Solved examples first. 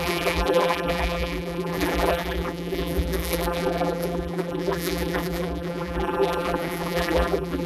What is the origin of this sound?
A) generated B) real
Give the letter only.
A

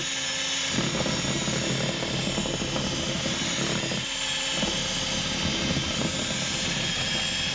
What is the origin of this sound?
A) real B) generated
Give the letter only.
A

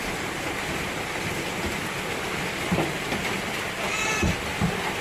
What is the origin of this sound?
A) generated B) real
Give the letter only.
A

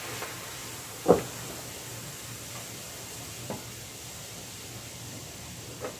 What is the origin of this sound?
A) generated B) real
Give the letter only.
A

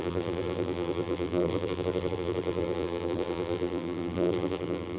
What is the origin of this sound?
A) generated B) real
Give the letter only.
A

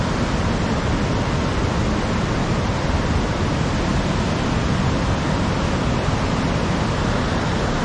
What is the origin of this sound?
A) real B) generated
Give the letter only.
A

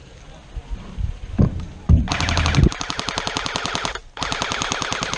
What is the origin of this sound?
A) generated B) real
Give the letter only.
B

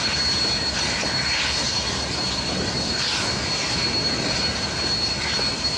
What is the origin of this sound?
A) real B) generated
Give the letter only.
A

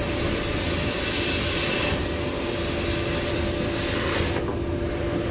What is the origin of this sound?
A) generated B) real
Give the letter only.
B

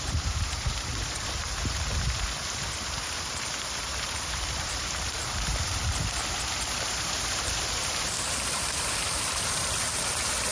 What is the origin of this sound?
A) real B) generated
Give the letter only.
B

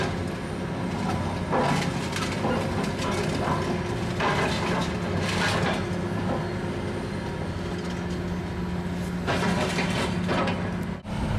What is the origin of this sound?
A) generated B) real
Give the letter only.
B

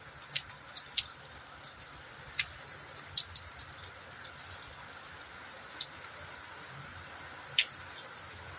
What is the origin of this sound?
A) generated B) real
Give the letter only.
B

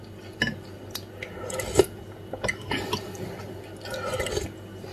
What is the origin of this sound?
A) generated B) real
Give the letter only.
B